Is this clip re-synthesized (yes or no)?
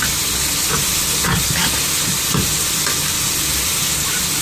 no